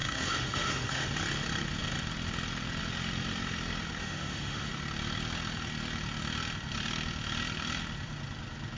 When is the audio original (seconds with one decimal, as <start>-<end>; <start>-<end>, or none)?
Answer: 1.1-4.0; 4.7-8.8